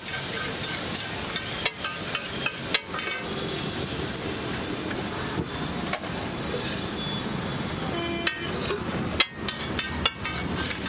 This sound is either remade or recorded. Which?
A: recorded